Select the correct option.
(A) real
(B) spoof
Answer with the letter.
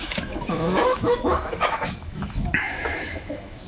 B